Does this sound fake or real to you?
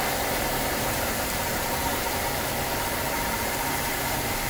fake